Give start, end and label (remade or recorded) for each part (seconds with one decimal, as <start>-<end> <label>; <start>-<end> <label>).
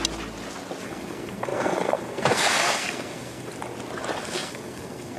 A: 0.0-0.8 recorded; 0.8-3.5 remade; 3.5-4.2 recorded; 4.2-5.2 remade